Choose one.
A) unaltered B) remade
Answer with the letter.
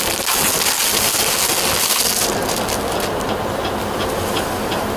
A